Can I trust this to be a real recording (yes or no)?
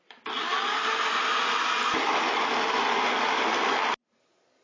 yes